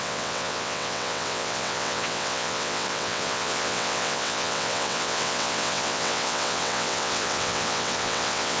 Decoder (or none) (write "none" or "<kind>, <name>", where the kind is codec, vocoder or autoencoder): vocoder, WaveNeXt